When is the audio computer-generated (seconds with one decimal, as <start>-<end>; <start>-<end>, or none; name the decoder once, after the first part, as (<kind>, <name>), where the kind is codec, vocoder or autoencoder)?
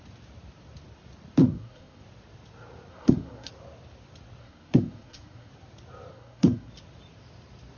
1.4-2.0 (codec, SNAC); 2.9-3.5; 4.4-5.5; 6.1-6.7